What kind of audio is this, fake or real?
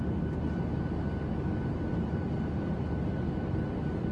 real